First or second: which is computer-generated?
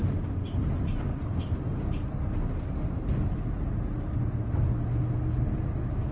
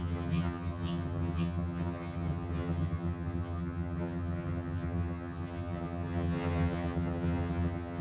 second